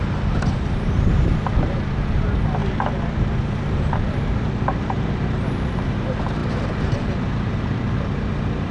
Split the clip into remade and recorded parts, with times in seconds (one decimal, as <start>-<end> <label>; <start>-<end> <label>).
0.0-2.6 remade; 2.6-3.2 recorded; 3.2-8.7 remade